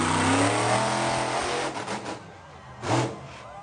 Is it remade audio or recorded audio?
recorded